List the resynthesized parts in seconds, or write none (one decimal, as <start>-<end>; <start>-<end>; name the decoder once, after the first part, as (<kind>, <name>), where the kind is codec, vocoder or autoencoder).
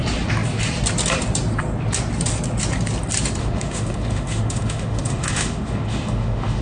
3.4-6.6 (autoencoder, DAC-VAE)